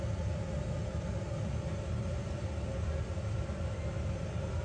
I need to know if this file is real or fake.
real